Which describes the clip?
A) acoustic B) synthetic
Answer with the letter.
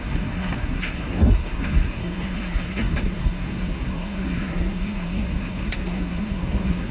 B